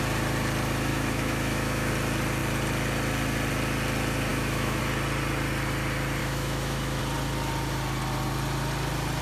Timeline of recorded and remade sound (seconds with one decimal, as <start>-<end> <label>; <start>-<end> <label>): 0.0-0.9 recorded; 0.9-1.9 remade; 1.9-4.3 recorded; 4.3-4.8 remade; 4.8-6.2 recorded; 6.2-7.0 remade; 7.0-9.2 recorded